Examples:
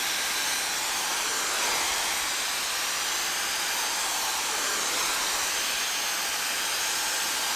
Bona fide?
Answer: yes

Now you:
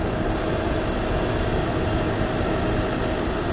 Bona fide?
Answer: yes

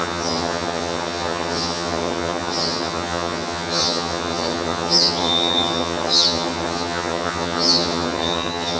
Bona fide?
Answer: no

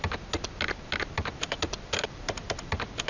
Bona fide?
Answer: yes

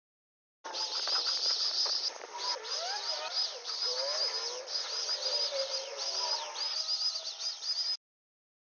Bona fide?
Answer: yes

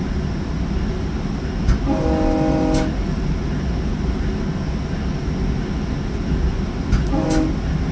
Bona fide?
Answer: yes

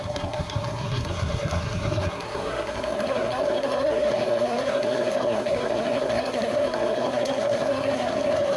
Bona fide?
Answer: no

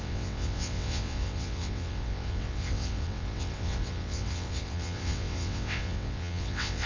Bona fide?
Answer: no